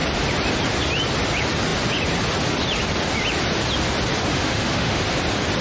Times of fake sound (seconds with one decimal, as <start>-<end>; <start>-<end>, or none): 4.3-5.0